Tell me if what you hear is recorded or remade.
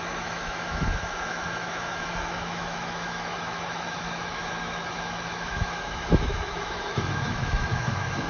remade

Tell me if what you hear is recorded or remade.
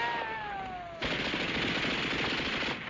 recorded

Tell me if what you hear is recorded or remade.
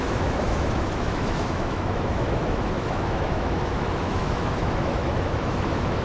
remade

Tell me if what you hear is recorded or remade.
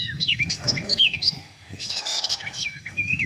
remade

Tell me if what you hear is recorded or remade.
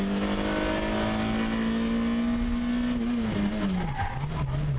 recorded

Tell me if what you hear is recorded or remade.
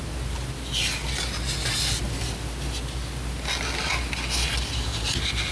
recorded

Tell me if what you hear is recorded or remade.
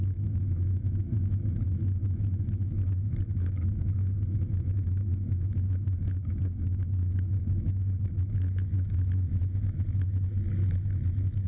remade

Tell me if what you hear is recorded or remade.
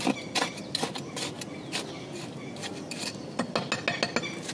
recorded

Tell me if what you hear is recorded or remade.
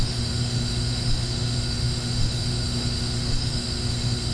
remade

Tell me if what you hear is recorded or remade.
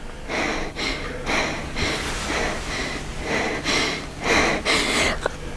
recorded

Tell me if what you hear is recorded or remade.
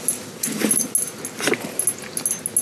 recorded